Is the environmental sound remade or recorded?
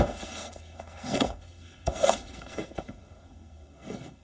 remade